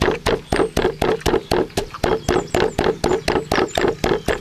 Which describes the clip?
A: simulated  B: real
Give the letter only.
B